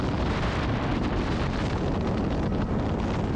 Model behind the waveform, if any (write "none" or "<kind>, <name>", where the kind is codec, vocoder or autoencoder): none